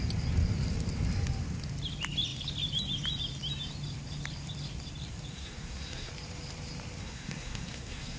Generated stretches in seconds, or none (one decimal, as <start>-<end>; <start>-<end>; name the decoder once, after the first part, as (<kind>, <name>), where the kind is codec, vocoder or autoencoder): 5.3-6.1 (codec, SNAC); 7.0-8.2

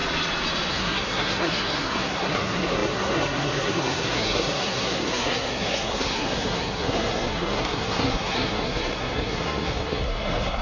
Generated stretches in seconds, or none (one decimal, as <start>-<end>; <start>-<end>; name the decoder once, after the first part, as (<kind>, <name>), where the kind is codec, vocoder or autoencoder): 0.7-10.6 (codec, SNAC)

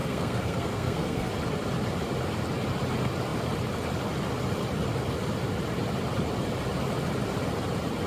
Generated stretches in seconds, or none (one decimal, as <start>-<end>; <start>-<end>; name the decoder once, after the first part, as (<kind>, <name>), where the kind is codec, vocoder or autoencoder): 0.0-1.3 (codec, SNAC)

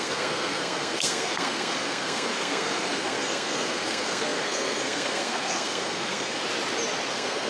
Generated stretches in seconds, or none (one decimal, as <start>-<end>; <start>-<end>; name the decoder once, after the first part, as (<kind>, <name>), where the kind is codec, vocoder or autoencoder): 0.0-6.4 (codec, SNAC); 7.1-7.5

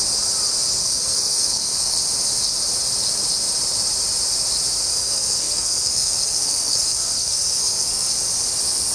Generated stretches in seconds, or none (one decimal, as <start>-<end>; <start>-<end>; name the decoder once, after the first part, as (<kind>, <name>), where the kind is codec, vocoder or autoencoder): 0.8-2.0 (codec, SNAC); 4.9-8.1

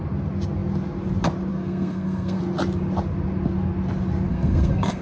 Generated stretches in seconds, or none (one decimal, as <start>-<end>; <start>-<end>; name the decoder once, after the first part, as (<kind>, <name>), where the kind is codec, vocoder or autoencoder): 1.5-2.4 (codec, SNAC); 4.3-5.0